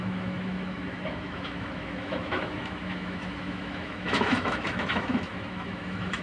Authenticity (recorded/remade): remade